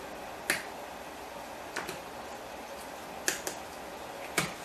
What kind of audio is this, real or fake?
real